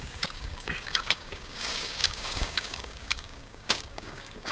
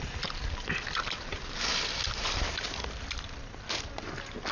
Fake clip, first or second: first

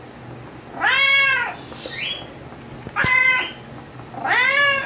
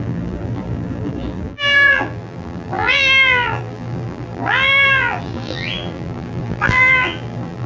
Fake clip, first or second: second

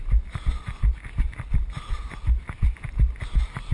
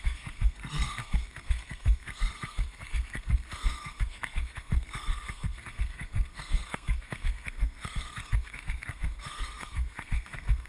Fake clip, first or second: second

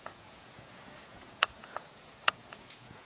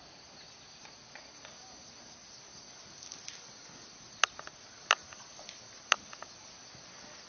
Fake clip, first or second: first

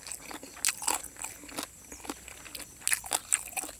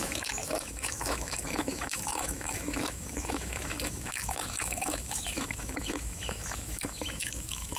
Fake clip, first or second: second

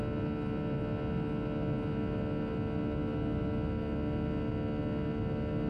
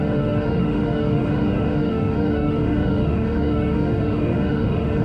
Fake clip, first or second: second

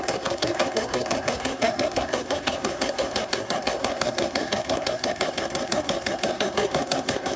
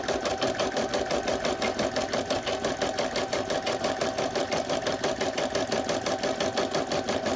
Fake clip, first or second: first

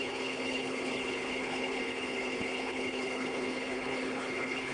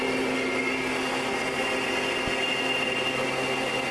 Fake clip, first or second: first